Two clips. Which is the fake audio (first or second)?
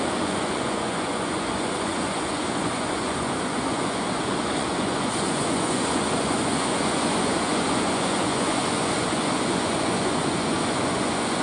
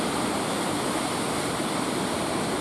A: first